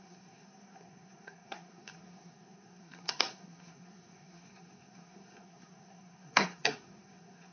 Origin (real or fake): fake